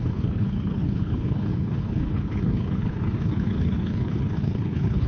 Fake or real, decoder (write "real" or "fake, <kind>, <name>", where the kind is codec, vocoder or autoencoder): fake, codec, HILCodec